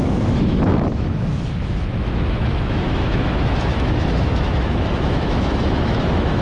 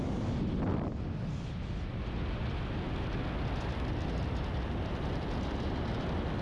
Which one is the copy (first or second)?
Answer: first